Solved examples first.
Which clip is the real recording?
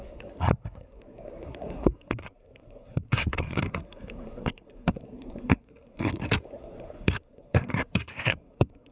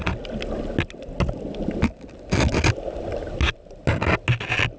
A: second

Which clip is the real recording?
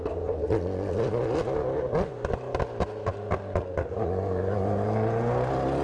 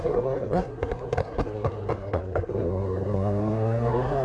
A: first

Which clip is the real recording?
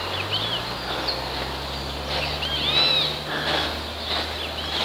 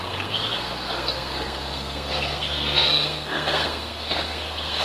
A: first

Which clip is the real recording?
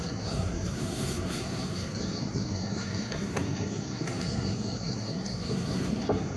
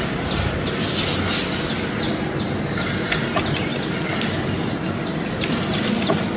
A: second